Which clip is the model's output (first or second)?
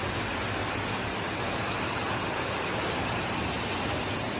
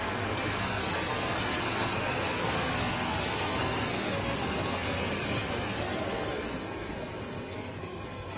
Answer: second